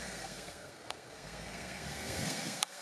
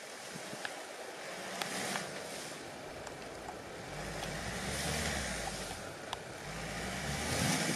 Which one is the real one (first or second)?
second